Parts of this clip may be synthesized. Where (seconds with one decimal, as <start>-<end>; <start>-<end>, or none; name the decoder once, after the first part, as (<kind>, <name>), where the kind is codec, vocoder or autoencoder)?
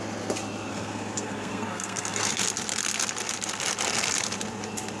0.7-2.3 (codec, SNAC)